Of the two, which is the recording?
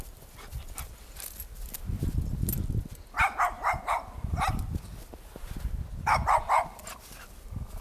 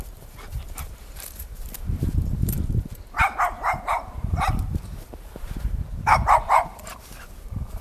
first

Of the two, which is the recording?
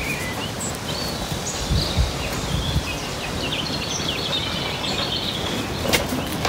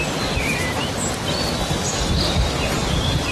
first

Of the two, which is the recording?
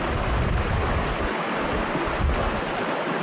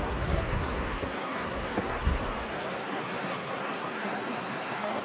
first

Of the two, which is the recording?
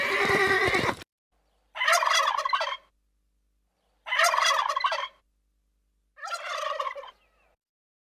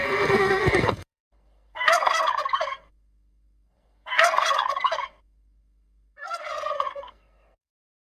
first